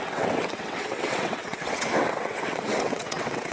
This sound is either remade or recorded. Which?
remade